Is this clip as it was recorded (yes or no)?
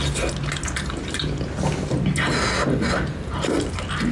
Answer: yes